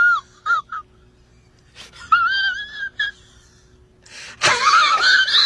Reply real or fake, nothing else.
real